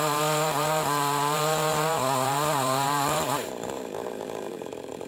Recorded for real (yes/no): no